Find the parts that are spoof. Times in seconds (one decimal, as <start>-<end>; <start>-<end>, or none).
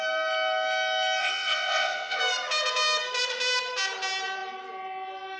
1.2-2.2